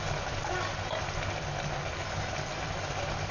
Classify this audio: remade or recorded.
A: recorded